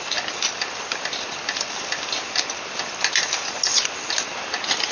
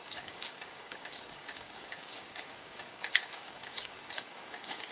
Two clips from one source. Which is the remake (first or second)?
second